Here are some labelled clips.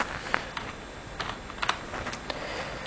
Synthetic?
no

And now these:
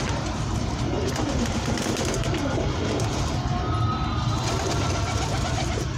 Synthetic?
yes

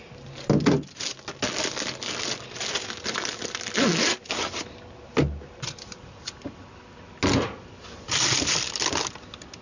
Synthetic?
no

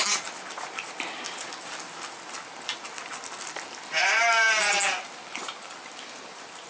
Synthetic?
no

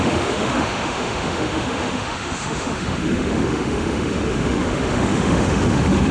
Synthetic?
yes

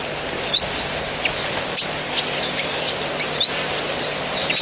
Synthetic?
no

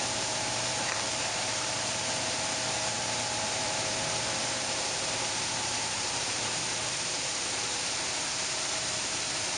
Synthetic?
yes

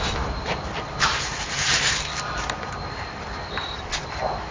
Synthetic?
no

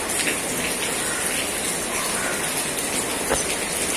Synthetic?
no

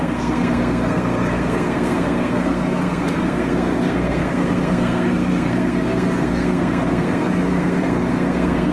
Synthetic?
yes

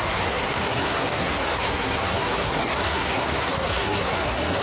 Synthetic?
yes